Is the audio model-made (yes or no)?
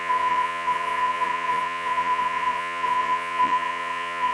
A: yes